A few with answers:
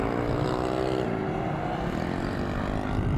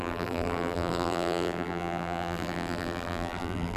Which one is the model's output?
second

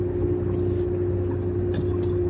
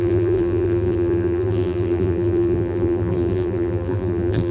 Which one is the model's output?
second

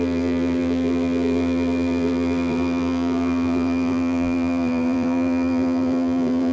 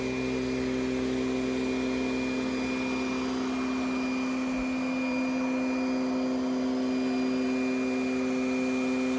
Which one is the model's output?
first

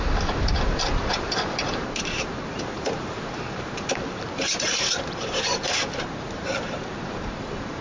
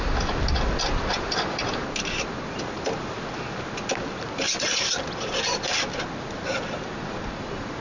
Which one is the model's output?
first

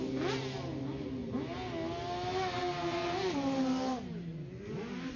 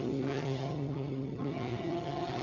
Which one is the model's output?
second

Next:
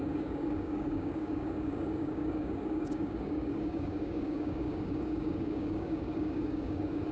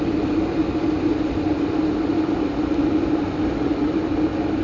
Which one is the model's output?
first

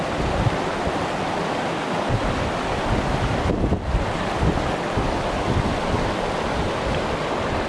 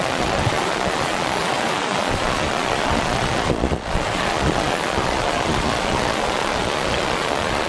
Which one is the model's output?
second